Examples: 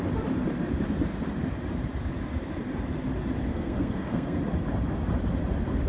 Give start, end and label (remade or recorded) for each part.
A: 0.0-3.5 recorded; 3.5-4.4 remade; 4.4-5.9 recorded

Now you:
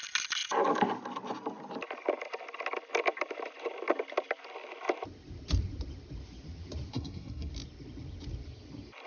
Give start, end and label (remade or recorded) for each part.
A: 0.0-6.9 recorded; 6.9-7.5 remade; 7.5-9.1 recorded

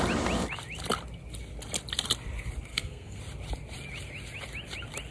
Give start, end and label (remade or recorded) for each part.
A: 0.0-2.7 recorded; 2.7-3.2 remade; 3.2-5.1 recorded

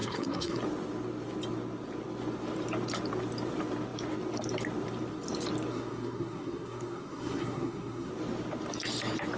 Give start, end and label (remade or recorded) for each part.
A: 0.0-0.6 remade; 0.6-5.7 recorded; 5.7-8.1 remade; 8.1-9.4 recorded